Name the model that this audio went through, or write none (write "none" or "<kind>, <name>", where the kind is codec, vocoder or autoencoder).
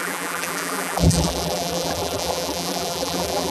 vocoder, BigVGAN v2